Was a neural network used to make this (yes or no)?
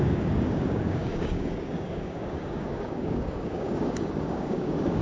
yes